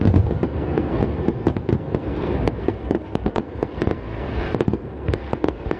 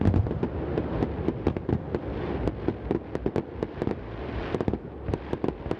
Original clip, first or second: second